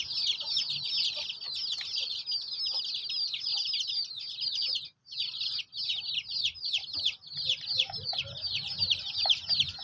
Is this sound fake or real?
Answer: real